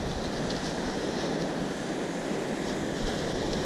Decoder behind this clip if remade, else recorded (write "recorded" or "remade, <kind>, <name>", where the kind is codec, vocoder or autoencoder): recorded